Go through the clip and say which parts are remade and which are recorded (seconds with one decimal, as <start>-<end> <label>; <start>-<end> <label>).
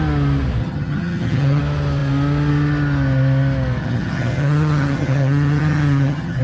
0.0-0.6 recorded; 0.6-1.6 remade; 1.6-3.8 recorded; 3.8-6.4 remade